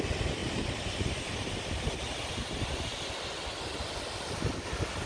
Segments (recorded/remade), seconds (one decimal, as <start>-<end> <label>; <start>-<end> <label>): 0.0-5.1 recorded